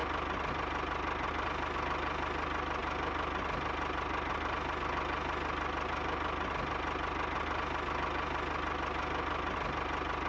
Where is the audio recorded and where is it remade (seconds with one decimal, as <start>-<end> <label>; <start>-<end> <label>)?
0.0-10.3 recorded